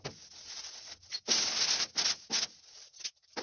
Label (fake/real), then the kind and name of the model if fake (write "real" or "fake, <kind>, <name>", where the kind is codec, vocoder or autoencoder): real